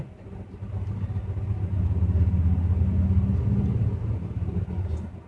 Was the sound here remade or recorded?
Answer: recorded